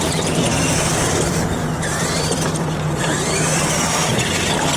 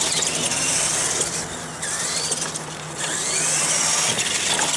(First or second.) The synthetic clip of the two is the first